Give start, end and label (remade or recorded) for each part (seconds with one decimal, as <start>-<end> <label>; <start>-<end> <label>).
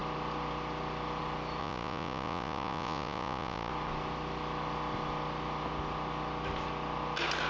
0.0-1.6 recorded; 1.6-3.7 remade; 3.7-7.5 recorded